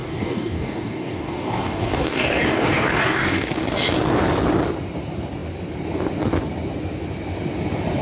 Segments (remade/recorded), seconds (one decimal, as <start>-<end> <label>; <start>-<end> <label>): 0.0-3.5 remade; 3.5-8.0 recorded